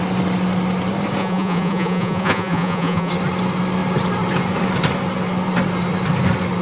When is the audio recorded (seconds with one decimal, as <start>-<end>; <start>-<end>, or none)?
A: 0.0-1.2; 3.1-6.6